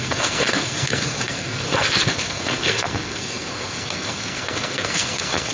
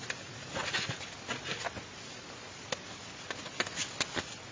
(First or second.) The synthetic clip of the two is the first